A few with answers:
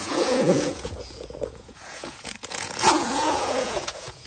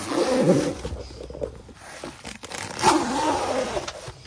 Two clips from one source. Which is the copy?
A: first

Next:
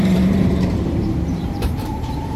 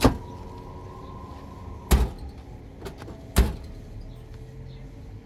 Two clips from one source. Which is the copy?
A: first